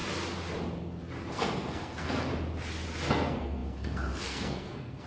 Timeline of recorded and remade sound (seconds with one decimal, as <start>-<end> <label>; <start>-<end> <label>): 0.0-1.3 recorded; 1.3-2.3 remade; 2.3-3.1 recorded; 3.1-5.1 remade